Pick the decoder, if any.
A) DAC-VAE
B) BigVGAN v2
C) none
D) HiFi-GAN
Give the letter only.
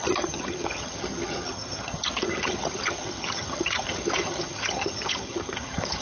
D